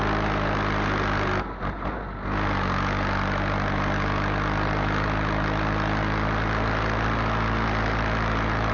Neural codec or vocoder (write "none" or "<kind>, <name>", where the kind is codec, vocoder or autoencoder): none